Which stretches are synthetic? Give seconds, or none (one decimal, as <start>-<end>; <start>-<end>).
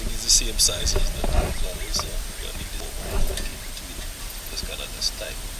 1.9-3.0; 3.5-4.2